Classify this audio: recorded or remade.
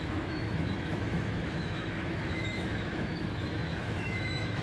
remade